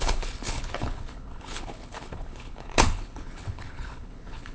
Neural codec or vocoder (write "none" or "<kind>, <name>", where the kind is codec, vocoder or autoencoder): codec, HILCodec